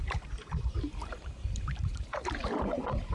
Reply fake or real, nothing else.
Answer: fake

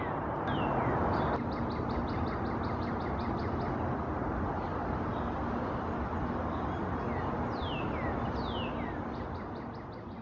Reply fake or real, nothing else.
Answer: real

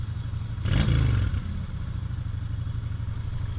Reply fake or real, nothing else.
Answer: real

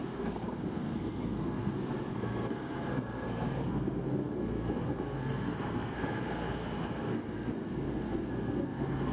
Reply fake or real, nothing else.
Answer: fake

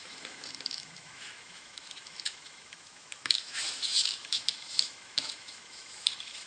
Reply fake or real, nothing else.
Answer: fake